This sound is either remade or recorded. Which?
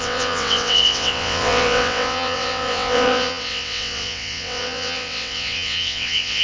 remade